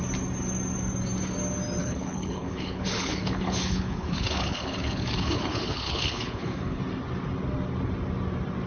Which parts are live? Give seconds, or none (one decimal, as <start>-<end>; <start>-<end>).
0.0-1.8; 6.8-8.7